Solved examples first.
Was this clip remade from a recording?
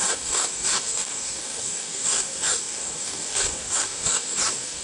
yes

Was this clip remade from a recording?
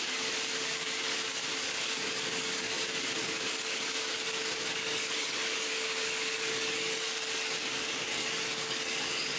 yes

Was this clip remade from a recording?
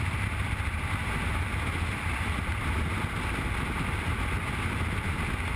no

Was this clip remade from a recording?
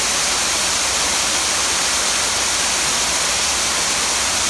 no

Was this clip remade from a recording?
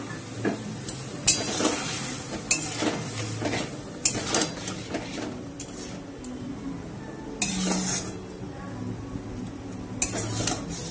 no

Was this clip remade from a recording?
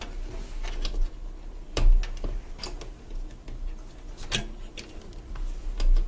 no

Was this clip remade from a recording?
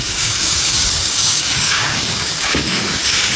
yes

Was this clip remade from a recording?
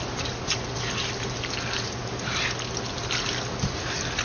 no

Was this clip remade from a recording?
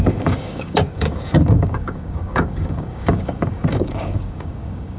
yes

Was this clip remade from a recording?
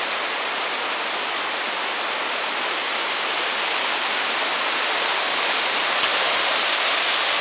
no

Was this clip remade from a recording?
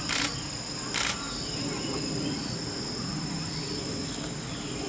no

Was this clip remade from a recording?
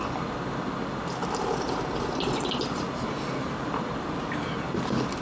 no